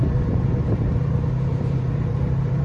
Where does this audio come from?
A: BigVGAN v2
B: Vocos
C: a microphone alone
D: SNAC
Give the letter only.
A